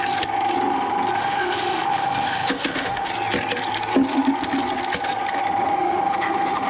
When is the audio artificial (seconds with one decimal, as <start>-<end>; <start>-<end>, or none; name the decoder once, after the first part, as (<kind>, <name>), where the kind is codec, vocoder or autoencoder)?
1.2-3.1 (autoencoder, DAC-VAE); 5.7-6.7

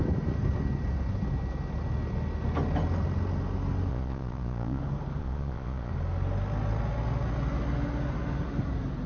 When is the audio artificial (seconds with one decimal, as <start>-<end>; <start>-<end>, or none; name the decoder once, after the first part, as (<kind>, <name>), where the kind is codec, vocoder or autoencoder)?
3.9-4.8 (vocoder, Vocos); 5.2-5.9

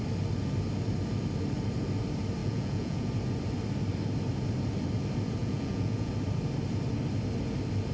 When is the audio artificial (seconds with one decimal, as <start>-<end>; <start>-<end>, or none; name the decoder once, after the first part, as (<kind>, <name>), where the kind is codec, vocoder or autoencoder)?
2.4-3.1 (vocoder, Vocos); 5.4-6.1

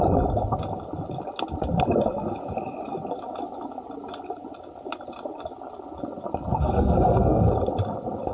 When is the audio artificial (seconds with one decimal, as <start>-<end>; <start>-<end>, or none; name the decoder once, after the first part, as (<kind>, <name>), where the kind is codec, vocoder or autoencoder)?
6.6-7.5 (codec, SNAC)

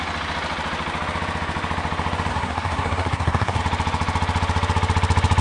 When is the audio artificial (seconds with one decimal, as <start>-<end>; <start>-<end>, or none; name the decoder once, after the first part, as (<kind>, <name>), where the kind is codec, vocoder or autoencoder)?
2.3-3.6 (codec, SNAC)